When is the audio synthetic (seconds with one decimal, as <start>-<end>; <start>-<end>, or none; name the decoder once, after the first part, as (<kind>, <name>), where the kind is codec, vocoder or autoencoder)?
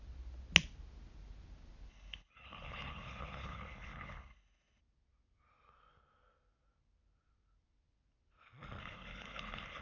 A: 1.9-4.8 (codec, HILCodec); 8.8-9.8